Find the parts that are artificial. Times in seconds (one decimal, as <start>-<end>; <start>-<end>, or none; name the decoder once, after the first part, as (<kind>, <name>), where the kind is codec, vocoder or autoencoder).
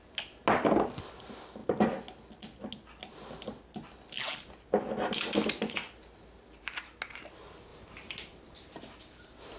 none